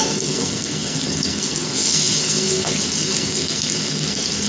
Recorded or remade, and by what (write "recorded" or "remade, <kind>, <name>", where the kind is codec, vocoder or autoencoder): remade, codec, SNAC